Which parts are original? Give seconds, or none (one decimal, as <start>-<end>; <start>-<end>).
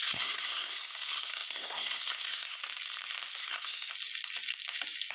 2.6-3.4; 3.9-5.1